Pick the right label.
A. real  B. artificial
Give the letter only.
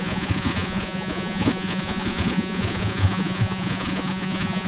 B